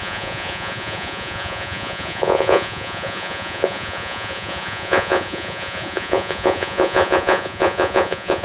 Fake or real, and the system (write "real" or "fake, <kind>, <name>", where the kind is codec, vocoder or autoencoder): fake, vocoder, Vocos